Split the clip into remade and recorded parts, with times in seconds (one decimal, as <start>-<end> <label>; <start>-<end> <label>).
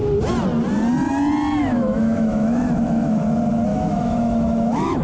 0.0-1.6 recorded; 1.6-3.2 remade; 3.2-3.7 recorded; 3.7-5.0 remade